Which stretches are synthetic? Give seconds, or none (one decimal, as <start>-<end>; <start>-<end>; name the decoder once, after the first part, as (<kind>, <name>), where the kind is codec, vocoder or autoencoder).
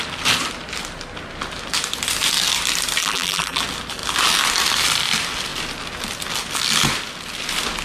3.0-3.6 (vocoder, BigVGAN v2)